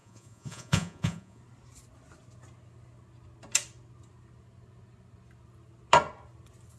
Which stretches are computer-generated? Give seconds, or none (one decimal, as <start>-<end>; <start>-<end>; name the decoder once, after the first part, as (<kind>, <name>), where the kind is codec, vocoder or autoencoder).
0.0-1.4 (vocoder, Vocos)